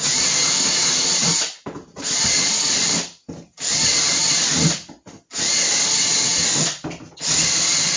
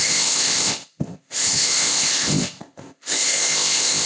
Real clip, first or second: first